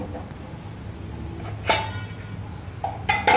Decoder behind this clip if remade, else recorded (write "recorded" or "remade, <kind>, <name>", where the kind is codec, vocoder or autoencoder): recorded